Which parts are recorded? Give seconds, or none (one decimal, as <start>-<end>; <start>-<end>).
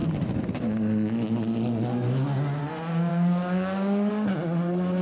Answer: 0.0-3.1; 4.1-5.0